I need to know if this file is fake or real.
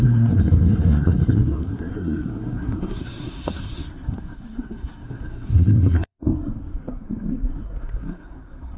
fake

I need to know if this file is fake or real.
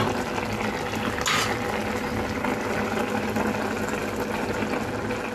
real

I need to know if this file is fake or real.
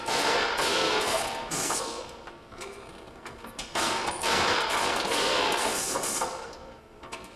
fake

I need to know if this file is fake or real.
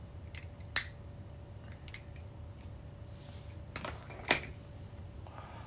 real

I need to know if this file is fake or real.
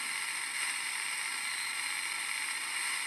real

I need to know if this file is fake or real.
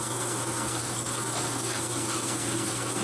fake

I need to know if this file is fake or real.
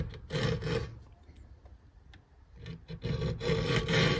real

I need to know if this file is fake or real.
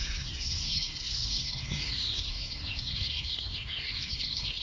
fake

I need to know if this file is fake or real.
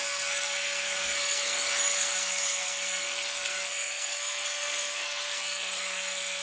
fake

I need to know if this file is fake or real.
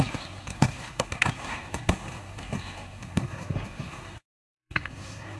fake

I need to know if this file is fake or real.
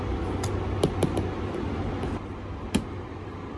real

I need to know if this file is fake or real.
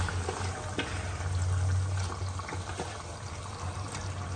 real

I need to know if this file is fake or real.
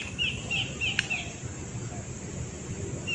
real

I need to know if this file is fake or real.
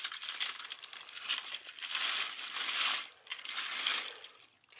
real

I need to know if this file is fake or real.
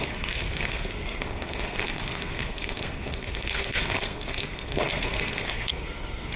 fake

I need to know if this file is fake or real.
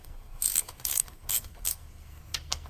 fake